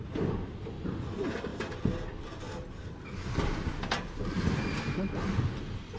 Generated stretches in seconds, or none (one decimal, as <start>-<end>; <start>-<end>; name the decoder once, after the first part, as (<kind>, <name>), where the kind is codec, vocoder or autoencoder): none